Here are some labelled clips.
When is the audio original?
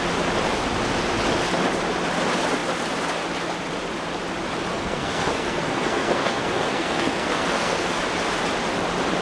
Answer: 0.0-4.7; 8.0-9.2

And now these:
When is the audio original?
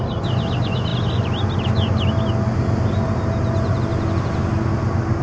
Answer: 0.0-5.2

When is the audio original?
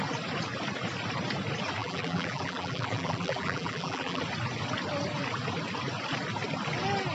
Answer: 0.0-1.8; 4.2-7.1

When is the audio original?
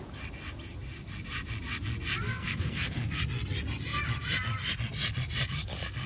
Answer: 0.0-2.3; 3.2-6.1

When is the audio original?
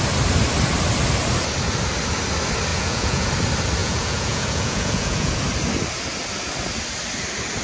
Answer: 0.0-2.7; 3.3-3.8; 5.4-7.6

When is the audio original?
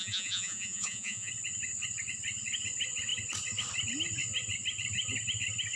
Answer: 1.3-5.8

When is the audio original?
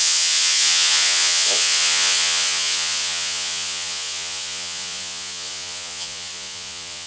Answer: none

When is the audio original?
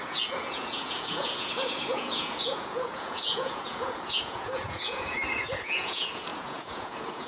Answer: none